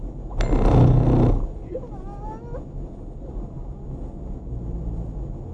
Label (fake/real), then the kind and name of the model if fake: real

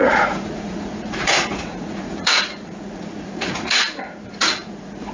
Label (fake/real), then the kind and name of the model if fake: fake, vocoder, Vocos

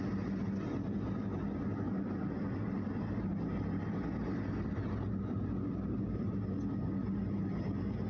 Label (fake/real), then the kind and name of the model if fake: real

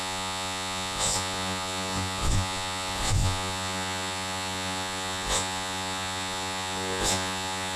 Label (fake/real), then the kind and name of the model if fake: fake, vocoder, Vocos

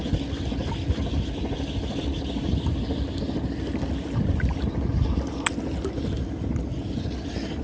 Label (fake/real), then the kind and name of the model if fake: real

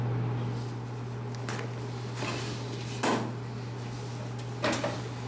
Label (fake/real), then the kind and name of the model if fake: real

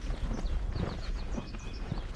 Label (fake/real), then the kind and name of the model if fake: fake, vocoder, Vocos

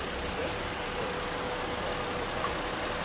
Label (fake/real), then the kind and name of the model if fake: real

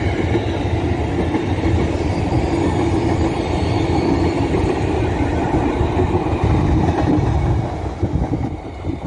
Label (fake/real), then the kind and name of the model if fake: real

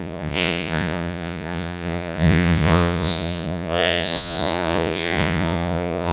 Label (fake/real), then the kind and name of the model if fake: fake, vocoder, Vocos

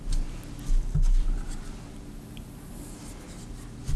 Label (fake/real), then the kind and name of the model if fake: real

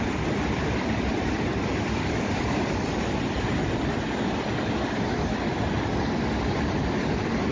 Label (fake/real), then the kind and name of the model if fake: real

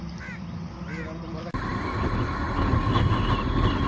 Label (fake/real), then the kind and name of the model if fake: real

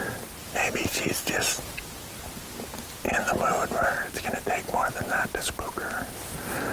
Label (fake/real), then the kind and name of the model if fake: real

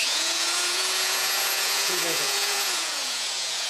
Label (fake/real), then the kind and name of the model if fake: fake, vocoder, Vocos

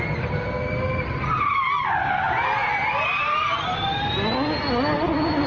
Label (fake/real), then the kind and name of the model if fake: real